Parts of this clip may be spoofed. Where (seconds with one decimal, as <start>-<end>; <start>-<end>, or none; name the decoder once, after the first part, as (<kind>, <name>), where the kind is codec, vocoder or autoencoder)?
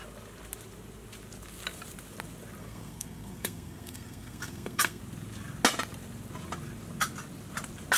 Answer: 2.6-5.0 (codec, SNAC)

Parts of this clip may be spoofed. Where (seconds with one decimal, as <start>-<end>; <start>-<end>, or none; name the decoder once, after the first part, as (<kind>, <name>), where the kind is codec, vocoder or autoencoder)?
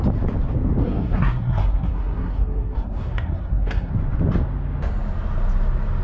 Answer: 0.8-3.9 (codec, SNAC)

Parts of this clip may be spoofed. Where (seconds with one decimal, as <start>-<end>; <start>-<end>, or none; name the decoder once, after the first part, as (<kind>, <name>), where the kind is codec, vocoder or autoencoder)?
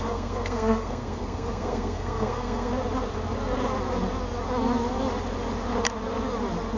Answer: 0.0-2.7 (codec, SNAC)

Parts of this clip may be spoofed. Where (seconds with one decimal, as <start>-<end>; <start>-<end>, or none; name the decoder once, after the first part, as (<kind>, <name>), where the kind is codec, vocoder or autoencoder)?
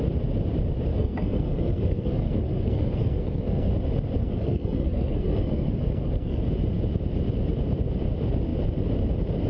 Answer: 0.9-3.7 (codec, SNAC); 4.2-6.4